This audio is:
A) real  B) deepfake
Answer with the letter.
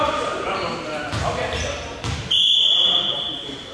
B